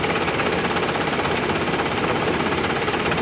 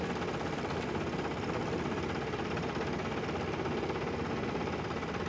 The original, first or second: second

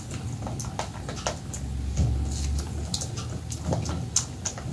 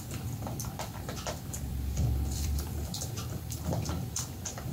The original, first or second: first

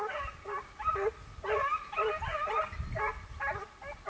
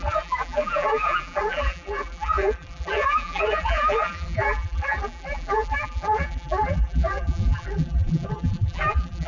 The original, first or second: first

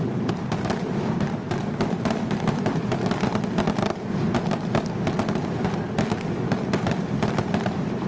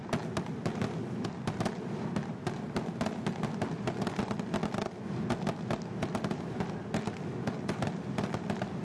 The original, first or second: second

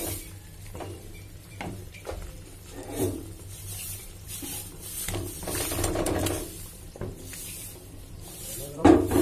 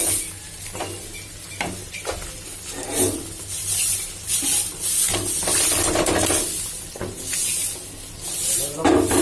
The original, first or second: second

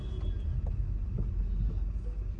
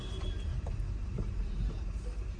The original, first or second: first